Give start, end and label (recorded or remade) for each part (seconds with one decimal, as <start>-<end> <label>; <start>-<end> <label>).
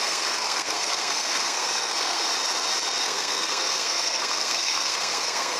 0.0-2.3 remade; 2.3-3.0 recorded; 3.0-5.6 remade